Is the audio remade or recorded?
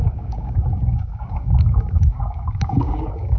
remade